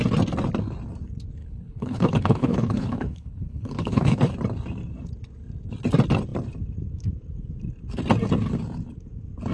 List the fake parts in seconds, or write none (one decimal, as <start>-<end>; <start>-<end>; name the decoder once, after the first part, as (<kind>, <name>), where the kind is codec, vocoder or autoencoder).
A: 1.4-4.2 (codec, HILCodec)